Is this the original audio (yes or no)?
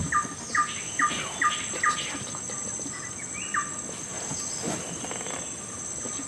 yes